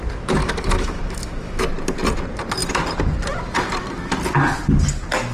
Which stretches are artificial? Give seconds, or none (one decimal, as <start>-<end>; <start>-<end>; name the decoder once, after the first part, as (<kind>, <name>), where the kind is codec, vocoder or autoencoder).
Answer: 0.4-1.6 (autoencoder, DAC-VAE)